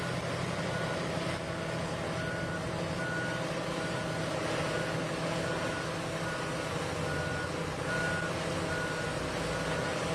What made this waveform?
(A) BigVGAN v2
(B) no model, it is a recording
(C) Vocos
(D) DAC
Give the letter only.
B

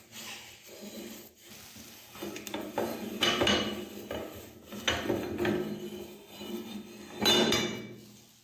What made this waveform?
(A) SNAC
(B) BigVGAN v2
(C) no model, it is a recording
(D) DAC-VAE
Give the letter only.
C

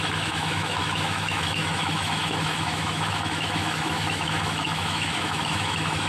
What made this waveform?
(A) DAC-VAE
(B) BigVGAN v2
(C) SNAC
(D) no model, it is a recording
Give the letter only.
A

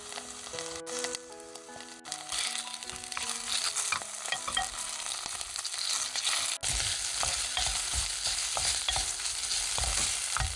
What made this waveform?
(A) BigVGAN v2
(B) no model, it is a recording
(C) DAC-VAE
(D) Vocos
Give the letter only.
B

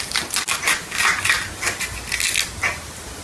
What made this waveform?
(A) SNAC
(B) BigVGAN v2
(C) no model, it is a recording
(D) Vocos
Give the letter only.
C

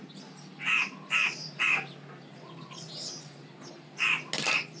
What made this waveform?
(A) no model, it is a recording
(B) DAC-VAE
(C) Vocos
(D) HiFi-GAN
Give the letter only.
A